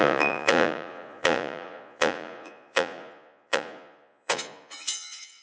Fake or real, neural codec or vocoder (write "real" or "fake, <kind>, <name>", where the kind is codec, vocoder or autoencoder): fake, vocoder, Vocos